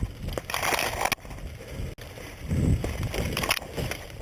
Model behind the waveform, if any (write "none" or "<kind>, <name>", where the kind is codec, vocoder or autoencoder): none